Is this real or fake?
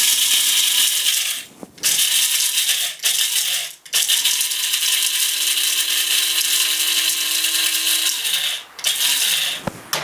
real